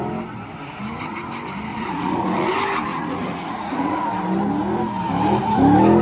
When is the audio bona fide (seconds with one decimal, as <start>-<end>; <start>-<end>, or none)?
0.0-1.7; 2.5-2.9; 4.0-6.0